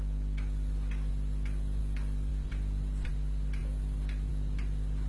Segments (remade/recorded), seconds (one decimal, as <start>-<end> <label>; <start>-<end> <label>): 0.0-2.3 recorded; 2.3-3.1 remade; 3.1-5.1 recorded

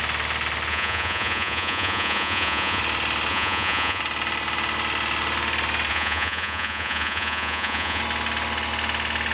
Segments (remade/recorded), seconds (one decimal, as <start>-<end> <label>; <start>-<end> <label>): 0.0-0.7 recorded; 0.7-2.8 remade; 2.8-3.3 recorded; 3.3-4.0 remade; 4.0-5.9 recorded; 5.9-8.0 remade; 8.0-9.3 recorded